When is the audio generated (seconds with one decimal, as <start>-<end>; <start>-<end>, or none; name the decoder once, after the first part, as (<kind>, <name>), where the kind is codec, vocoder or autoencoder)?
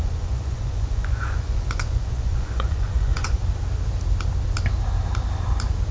0.0-3.4 (vocoder, Vocos)